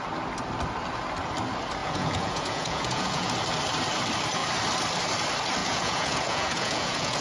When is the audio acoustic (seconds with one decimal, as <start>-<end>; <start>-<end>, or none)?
0.0-1.8; 3.3-5.6